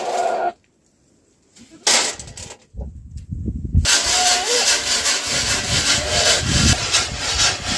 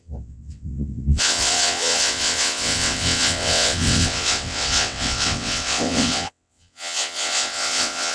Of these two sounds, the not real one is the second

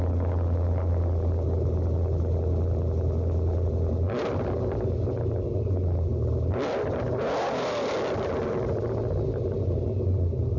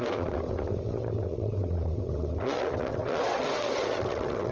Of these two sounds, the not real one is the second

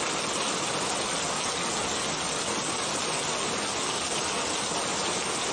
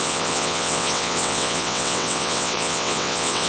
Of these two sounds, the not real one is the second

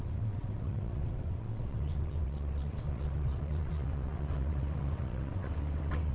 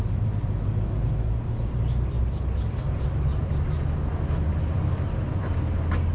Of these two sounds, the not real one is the first